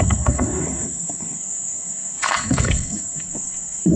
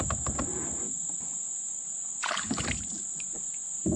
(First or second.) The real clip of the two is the second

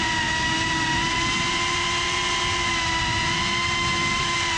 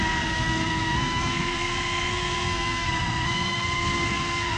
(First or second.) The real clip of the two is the first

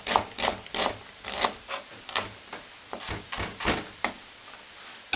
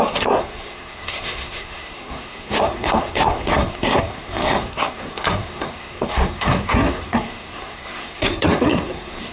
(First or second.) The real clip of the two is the first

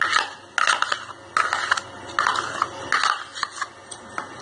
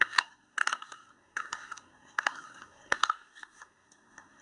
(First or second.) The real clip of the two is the first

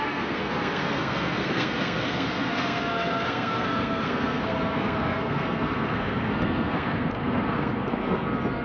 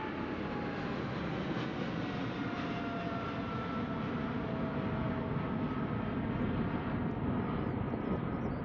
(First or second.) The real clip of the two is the second